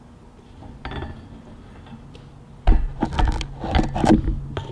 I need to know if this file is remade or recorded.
recorded